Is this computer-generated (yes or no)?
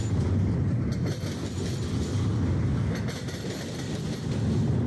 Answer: no